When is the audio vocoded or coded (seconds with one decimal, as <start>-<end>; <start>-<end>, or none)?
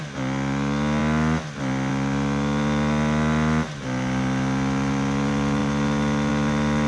none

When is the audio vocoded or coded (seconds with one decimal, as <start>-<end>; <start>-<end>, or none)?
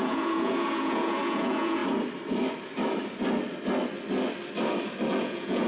0.0-1.8; 5.2-5.7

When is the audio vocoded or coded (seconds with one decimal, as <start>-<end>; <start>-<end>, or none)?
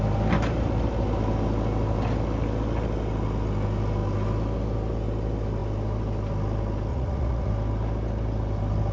6.9-7.5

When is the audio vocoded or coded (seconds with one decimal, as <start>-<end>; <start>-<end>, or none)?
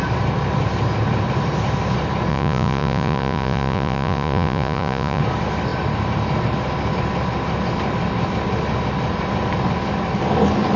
2.3-5.2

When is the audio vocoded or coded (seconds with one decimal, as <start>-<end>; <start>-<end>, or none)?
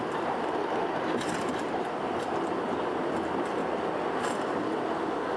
none